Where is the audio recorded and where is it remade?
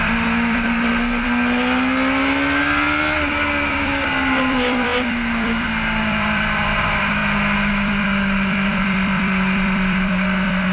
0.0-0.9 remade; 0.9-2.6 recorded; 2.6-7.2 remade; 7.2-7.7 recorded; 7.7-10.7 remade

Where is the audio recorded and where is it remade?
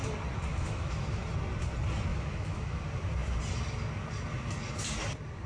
0.0-0.5 recorded; 0.5-1.2 remade; 1.2-2.1 recorded; 2.1-2.8 remade; 2.8-5.5 recorded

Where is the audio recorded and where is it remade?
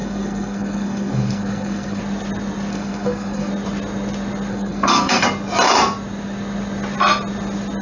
0.0-2.0 remade; 2.0-2.7 recorded; 2.7-3.5 remade; 3.5-4.5 recorded; 4.5-5.2 remade; 5.2-7.8 recorded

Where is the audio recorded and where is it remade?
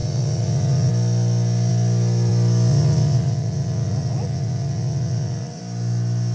0.0-0.9 remade; 0.9-2.7 recorded; 2.7-5.6 remade; 5.6-6.3 recorded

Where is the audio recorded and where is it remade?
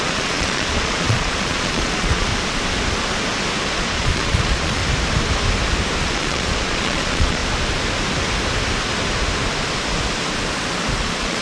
0.0-2.3 remade; 2.3-3.7 recorded; 3.7-4.8 remade; 4.8-6.0 recorded; 6.0-7.4 remade; 7.4-11.0 recorded; 11.0-11.4 remade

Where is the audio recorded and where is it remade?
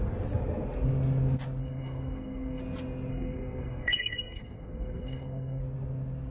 0.0-1.6 recorded; 1.6-2.6 remade; 2.6-3.1 recorded; 3.1-5.6 remade; 5.6-6.3 recorded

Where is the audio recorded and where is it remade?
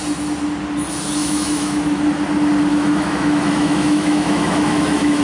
0.0-1.2 recorded; 1.2-2.0 remade; 2.0-2.7 recorded; 2.7-5.2 remade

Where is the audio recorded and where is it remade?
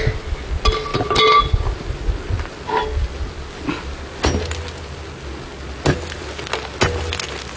0.0-7.6 recorded